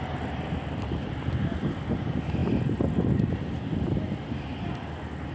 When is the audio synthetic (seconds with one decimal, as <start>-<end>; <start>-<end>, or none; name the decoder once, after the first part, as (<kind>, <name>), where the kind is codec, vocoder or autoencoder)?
none